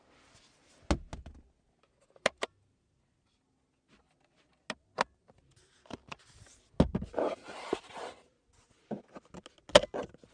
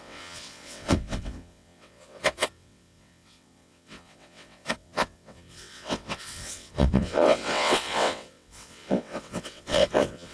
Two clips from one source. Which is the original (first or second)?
first